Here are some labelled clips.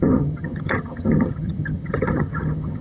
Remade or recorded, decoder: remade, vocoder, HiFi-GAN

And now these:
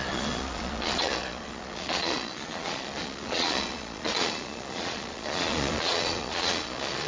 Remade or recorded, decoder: remade, vocoder, Vocos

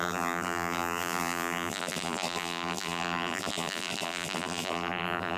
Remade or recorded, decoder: remade, vocoder, BigVGAN v2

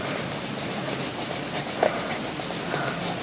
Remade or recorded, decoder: recorded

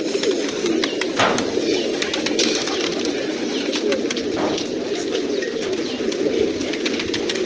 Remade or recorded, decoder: recorded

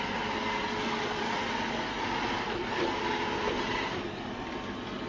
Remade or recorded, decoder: recorded